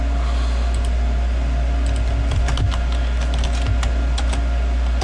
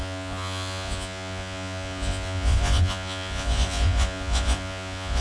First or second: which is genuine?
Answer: first